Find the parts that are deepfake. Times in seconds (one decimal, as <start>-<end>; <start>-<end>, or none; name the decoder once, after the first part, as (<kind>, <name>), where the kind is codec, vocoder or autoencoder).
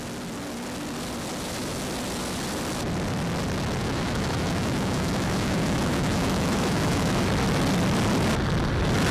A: 3.8-7.2 (autoencoder, DAC-VAE)